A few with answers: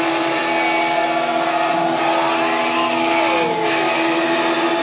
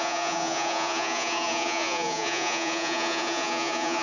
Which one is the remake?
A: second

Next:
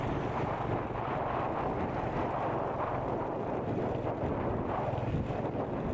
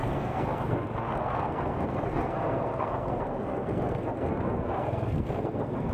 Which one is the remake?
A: second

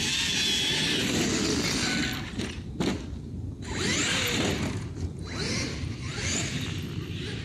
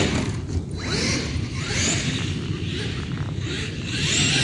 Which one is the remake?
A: second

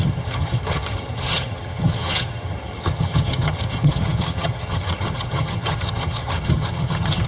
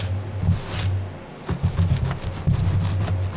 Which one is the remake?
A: first